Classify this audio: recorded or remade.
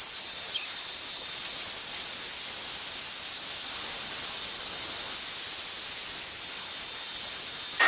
recorded